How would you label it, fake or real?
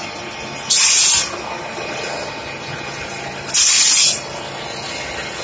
real